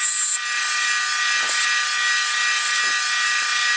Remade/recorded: recorded